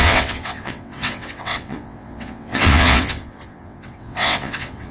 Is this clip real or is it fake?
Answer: fake